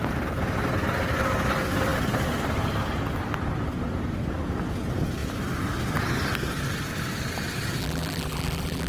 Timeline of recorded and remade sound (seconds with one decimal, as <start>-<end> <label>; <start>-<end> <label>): 0.0-7.8 recorded; 7.8-8.9 remade